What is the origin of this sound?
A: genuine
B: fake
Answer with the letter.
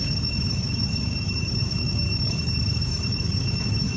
B